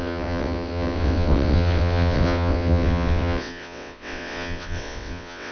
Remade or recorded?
remade